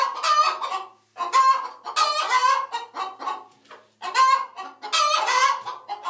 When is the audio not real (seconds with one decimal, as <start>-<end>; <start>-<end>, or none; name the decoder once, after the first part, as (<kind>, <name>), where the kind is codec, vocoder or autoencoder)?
none